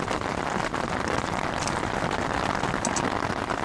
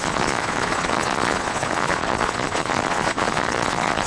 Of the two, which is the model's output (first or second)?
second